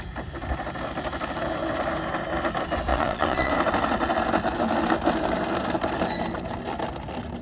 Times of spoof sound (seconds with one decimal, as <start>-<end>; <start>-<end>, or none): 2.9-3.5